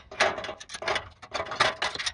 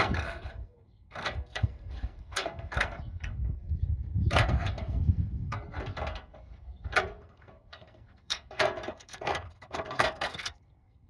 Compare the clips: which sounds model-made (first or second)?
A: second